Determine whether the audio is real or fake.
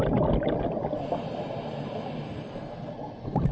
real